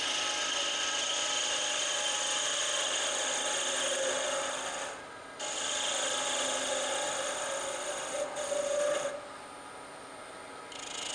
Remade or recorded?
recorded